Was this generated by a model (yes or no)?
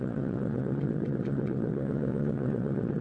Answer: yes